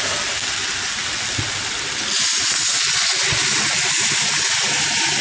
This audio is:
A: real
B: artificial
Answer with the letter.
A